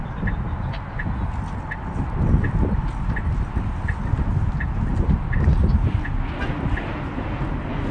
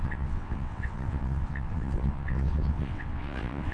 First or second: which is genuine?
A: first